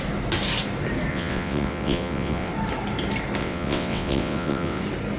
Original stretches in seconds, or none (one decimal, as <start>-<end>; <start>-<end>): 0.0-1.1; 2.5-3.4; 4.8-5.2